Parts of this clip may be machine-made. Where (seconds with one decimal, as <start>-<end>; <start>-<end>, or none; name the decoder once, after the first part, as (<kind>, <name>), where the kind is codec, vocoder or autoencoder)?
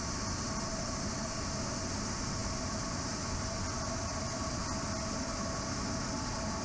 none